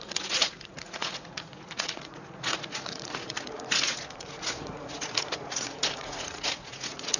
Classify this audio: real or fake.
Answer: fake